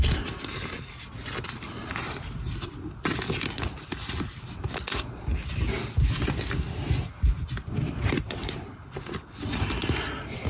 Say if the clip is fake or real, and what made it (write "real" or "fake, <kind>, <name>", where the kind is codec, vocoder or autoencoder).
real